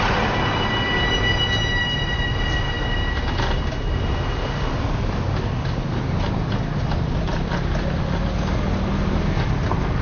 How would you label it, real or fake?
real